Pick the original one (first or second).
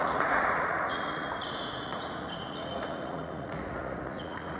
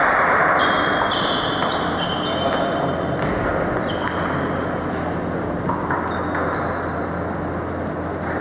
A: second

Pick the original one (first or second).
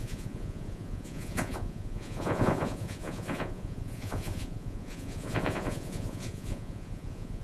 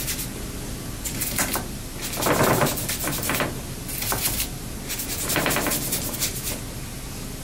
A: second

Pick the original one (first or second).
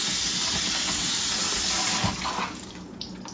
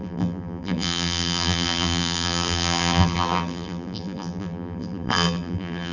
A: first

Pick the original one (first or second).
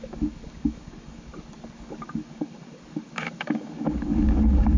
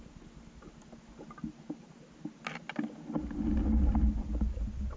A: second